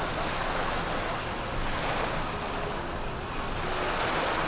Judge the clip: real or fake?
real